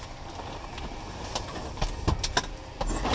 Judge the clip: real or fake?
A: real